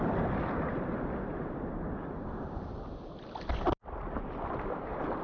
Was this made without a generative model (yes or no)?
yes